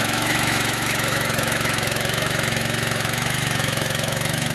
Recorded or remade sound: remade